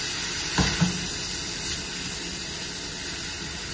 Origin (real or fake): real